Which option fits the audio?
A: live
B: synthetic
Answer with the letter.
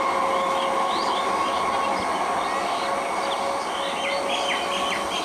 A